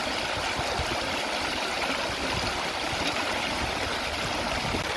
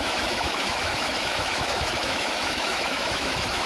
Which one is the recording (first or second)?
first